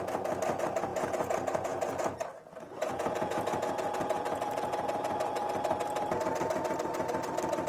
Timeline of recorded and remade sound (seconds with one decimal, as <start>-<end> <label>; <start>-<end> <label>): 0.0-0.9 recorded; 0.9-5.5 remade; 5.5-7.7 recorded